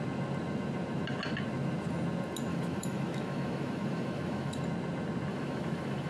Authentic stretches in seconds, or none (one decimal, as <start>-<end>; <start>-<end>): 0.0-2.5; 4.6-5.3